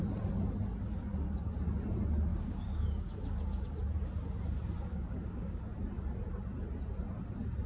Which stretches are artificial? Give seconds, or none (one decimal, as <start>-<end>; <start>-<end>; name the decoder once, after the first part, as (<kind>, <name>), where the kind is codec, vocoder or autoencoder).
2.3-3.6 (codec, DAC); 4.9-5.6